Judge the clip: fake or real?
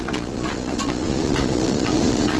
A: fake